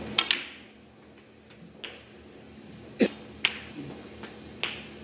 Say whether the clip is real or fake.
real